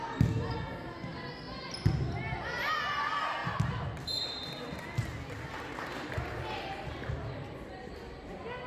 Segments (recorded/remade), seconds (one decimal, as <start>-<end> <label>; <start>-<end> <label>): 0.0-8.7 recorded